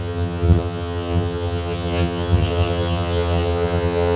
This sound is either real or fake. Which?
fake